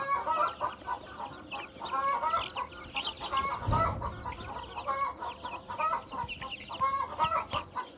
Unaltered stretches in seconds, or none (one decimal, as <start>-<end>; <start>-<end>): 0.0-7.3